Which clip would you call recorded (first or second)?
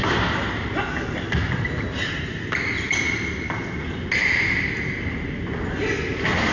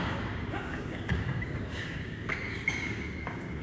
first